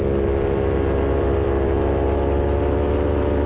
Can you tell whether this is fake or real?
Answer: real